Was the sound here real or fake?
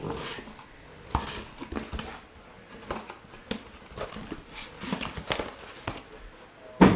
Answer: real